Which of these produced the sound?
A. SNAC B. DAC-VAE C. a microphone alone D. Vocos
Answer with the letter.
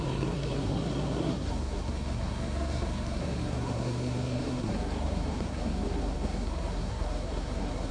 A